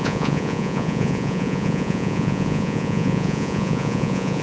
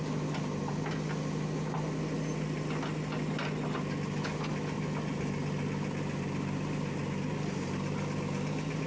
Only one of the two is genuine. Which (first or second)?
second